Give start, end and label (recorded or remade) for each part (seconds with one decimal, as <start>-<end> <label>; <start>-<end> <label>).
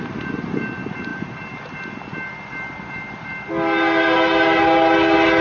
0.0-5.4 recorded